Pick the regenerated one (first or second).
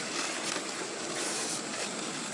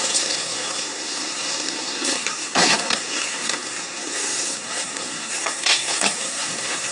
second